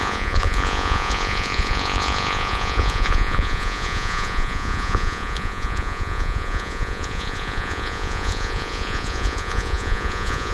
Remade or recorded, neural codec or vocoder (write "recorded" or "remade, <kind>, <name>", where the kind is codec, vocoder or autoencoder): remade, vocoder, Vocos